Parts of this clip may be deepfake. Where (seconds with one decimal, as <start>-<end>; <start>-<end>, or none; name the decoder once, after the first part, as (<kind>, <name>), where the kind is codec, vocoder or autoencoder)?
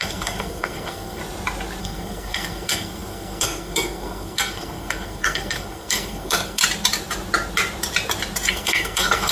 0.0-1.2 (codec, SNAC); 1.8-6.6; 8.5-9.3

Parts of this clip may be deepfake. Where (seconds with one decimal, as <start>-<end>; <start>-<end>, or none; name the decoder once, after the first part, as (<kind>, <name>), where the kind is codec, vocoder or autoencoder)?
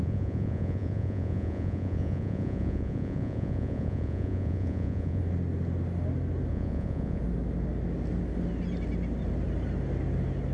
0.0-5.2 (vocoder, Vocos); 6.5-7.2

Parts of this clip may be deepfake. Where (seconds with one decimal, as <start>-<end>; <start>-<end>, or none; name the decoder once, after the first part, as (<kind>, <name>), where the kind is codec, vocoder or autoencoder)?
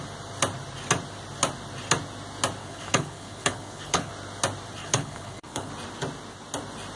2.6-4.1 (codec, HILCodec); 4.8-5.7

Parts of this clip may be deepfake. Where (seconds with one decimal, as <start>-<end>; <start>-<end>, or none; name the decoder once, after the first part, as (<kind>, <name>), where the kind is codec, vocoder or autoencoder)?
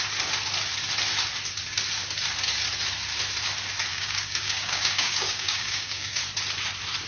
3.9-6.2 (codec, DAC)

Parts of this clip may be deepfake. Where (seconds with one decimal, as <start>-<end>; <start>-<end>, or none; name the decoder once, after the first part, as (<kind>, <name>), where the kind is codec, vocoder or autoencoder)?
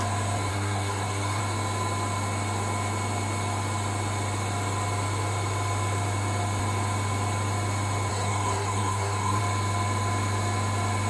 0.5-1.4 (codec, SNAC); 8.1-9.4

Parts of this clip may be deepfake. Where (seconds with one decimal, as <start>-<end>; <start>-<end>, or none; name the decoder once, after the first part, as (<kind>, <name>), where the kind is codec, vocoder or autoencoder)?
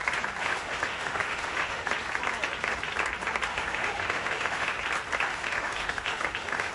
0.4-1.9 (autoencoder, DAC-VAE); 3.5-4.8; 5.3-6.7